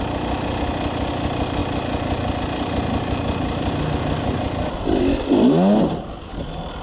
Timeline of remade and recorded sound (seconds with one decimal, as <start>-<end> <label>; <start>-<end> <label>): 0.0-6.8 recorded